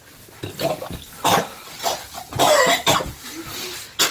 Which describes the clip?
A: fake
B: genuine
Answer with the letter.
B